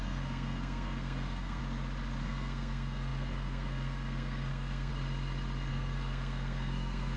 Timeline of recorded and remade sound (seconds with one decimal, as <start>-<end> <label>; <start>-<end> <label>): 0.0-1.6 remade; 1.6-2.2 recorded; 2.2-4.9 remade; 4.9-5.7 recorded; 5.7-7.2 remade